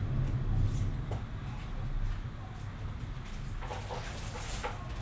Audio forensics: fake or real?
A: real